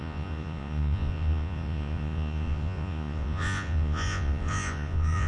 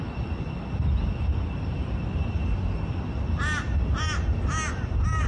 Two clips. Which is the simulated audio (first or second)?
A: first